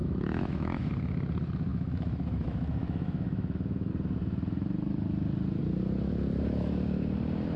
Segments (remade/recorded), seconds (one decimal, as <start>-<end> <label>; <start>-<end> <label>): 0.0-0.9 remade; 0.9-1.7 recorded; 1.7-3.9 remade; 3.9-7.6 recorded